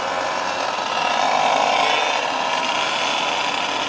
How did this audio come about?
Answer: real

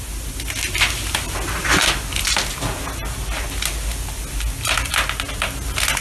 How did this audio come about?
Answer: real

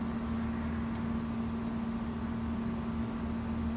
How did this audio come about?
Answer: real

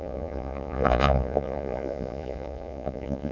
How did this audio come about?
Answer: fake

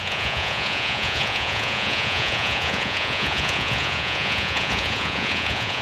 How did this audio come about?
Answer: fake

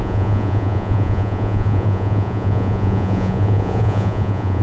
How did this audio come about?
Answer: fake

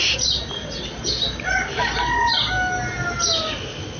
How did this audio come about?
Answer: real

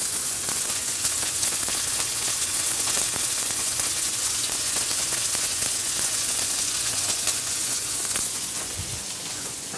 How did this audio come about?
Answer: fake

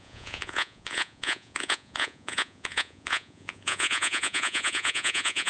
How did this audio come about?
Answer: fake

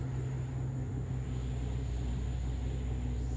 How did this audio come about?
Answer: real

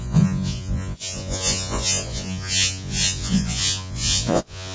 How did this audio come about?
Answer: fake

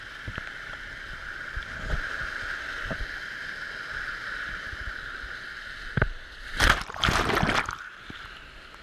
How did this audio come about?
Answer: real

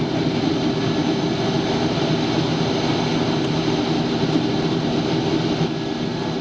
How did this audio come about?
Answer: real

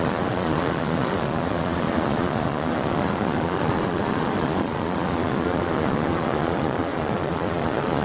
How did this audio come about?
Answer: fake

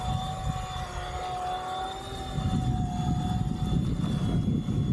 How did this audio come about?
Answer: real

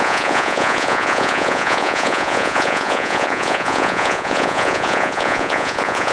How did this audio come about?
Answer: fake